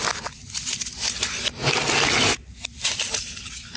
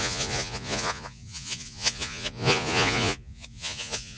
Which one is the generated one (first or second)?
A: second